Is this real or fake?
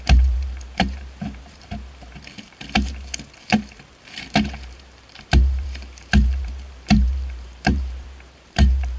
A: fake